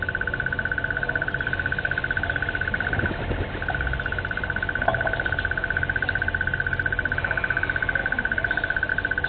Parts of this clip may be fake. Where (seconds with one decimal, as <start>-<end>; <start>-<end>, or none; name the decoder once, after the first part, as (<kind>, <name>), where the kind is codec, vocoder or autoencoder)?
8.0-8.9 (vocoder, BigVGAN v2)